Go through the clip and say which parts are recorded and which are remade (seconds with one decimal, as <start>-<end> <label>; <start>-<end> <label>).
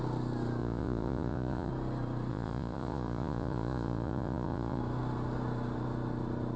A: 0.0-0.6 recorded; 0.6-1.7 remade; 1.7-2.3 recorded; 2.3-4.8 remade; 4.8-6.6 recorded